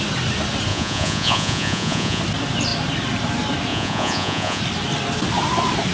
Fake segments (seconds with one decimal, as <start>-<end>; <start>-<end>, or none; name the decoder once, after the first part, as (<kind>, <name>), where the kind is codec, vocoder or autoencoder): 0.7-2.2 (vocoder, Vocos); 3.7-4.6